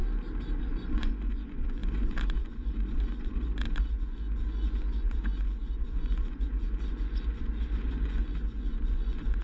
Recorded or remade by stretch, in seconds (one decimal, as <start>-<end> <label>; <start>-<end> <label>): 0.0-0.6 recorded; 0.6-9.4 remade